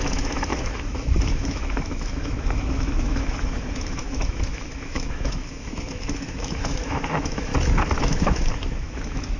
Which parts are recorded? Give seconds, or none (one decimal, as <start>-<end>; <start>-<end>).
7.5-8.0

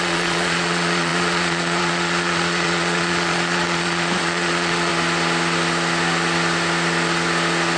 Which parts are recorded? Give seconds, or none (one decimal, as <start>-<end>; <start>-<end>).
4.9-7.8

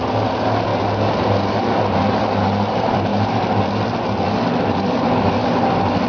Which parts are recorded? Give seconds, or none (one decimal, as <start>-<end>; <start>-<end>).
0.7-2.1; 3.1-4.7

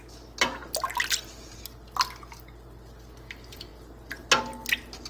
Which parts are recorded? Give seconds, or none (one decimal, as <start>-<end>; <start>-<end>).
0.0-5.1

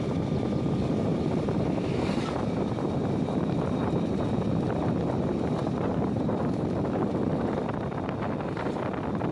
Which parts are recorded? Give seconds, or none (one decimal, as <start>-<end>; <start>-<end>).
0.0-1.1; 4.2-5.6; 7.3-9.3

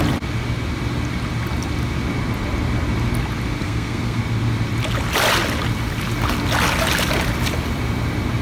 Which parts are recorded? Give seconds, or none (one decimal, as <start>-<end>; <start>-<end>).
0.0-3.6; 4.2-8.4

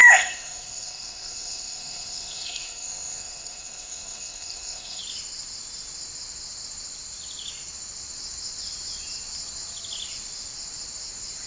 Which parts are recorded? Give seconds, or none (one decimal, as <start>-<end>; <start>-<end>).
5.0-11.5

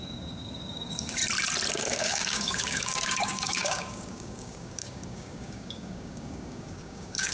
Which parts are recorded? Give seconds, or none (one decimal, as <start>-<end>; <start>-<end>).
1.2-1.7